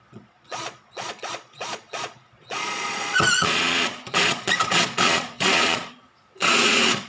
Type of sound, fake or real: fake